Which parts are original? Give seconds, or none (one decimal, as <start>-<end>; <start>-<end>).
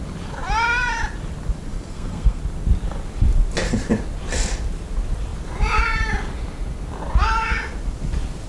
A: 0.0-1.7; 2.4-8.5